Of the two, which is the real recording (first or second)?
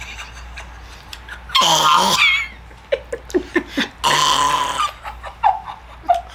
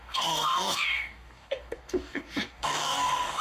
first